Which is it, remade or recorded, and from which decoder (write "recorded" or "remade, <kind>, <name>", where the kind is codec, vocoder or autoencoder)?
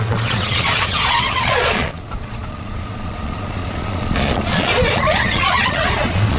remade, vocoder, Vocos